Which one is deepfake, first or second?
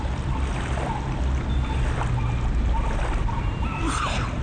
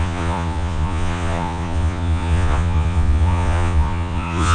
second